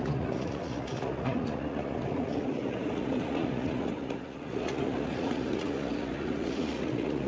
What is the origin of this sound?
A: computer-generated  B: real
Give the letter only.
A